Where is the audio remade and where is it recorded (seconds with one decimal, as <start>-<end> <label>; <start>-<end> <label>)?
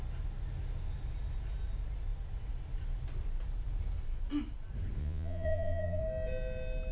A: 0.0-5.0 recorded; 5.0-6.0 remade; 6.0-6.9 recorded